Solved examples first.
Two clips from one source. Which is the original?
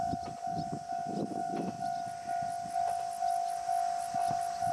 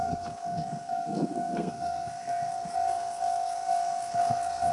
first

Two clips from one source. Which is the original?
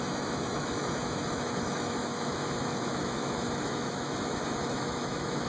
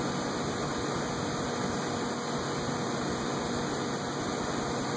second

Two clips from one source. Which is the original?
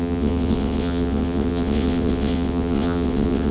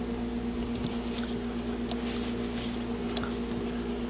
second